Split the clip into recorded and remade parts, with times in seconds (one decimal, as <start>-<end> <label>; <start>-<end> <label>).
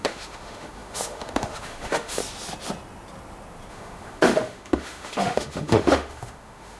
0.0-2.2 remade; 2.2-3.7 recorded; 3.7-6.8 remade